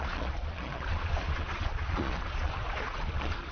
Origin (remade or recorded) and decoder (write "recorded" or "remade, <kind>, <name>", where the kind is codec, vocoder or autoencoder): remade, vocoder, Vocos